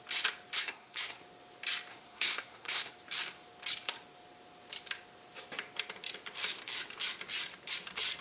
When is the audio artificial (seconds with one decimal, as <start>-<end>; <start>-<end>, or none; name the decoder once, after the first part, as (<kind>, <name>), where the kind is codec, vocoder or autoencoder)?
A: 0.6-1.2 (codec, SNAC); 1.9-2.9